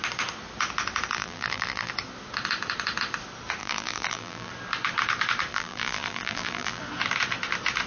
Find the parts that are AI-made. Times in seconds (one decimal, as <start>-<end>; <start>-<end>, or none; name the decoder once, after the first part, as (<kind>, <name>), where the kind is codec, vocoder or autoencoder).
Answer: 1.1-1.9 (vocoder, BigVGAN v2); 3.6-4.5; 5.5-6.8